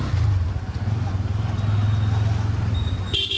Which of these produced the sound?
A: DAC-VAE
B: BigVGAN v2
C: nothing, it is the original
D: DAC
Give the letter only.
C